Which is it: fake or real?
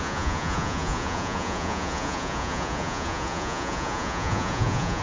fake